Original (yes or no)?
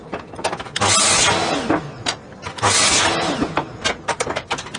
yes